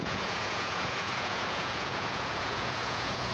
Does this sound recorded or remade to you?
remade